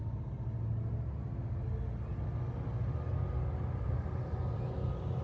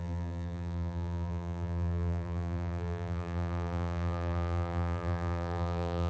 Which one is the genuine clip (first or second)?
first